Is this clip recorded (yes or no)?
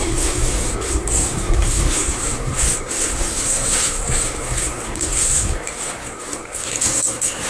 no